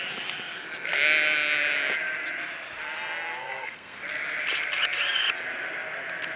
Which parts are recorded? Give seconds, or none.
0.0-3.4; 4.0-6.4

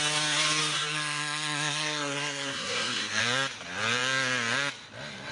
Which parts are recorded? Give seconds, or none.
0.0-0.6; 3.2-5.3

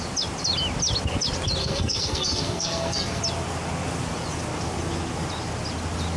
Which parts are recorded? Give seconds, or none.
0.0-1.6; 3.2-6.2

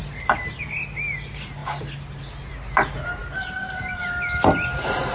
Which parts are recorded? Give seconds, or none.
0.0-5.1

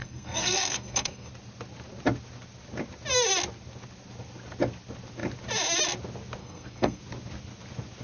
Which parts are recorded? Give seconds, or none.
1.3-6.4; 7.0-8.0

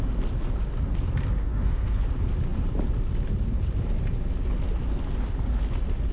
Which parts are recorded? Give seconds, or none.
0.0-1.4; 2.0-6.1

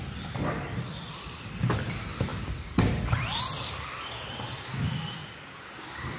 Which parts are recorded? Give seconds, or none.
0.0-6.2